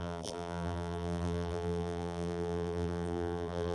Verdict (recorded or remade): remade